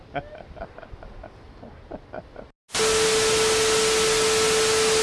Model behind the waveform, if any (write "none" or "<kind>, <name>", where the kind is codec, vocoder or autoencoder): none